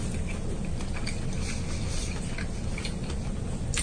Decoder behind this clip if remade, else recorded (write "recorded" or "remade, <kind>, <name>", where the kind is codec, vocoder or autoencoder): recorded